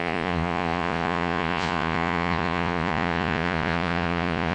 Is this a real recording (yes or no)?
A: no